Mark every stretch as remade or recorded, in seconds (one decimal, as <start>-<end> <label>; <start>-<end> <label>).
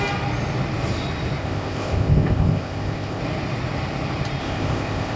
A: 0.0-1.4 recorded; 1.4-3.2 remade; 3.2-4.4 recorded; 4.4-5.2 remade